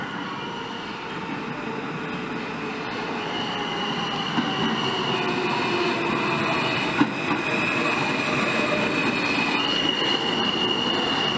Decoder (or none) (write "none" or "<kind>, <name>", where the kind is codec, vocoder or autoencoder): none